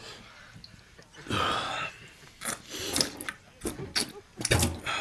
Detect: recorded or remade recorded